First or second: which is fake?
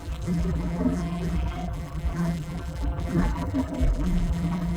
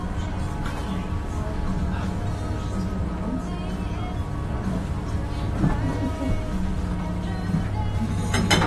first